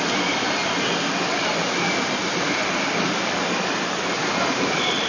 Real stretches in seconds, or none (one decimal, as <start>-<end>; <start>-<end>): 0.0-2.6